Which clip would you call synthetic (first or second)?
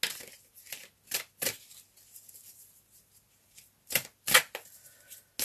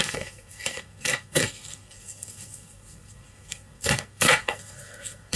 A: second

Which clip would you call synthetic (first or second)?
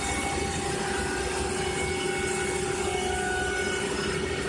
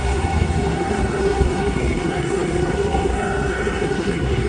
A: second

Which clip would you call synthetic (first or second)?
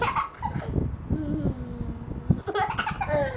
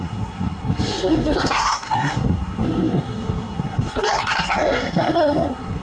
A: second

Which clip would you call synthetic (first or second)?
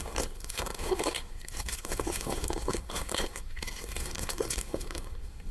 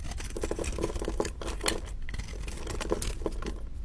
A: first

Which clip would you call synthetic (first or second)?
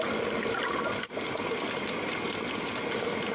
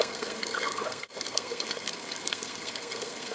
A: second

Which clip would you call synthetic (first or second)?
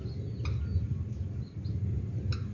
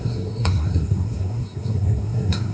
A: second